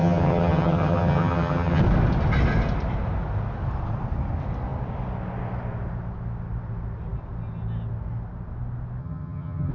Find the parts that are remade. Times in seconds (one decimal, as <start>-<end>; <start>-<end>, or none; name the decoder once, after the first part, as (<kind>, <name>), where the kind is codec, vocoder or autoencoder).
0.0-1.8 (vocoder, HiFi-GAN); 9.0-9.7